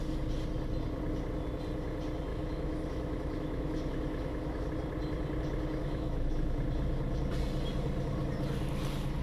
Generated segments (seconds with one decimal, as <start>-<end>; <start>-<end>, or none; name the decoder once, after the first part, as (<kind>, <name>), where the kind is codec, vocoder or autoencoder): 2.3-4.7 (autoencoder, DAC-VAE); 5.8-6.6